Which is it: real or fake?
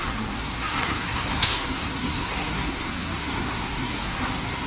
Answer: fake